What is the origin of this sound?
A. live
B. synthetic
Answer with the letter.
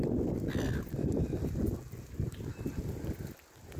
A